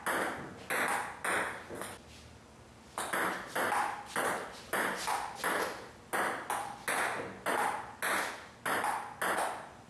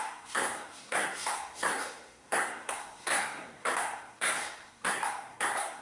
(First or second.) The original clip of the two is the first